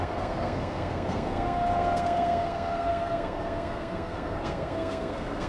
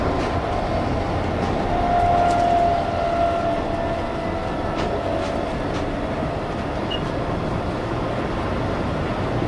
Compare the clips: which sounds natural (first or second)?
second